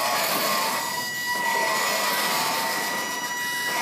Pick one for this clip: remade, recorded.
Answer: recorded